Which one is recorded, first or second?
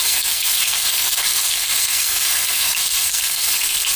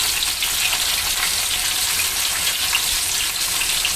second